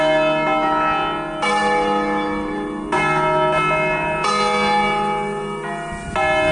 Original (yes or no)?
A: yes